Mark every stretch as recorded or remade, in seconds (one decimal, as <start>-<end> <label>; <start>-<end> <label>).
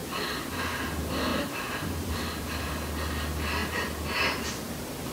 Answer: 0.0-5.1 recorded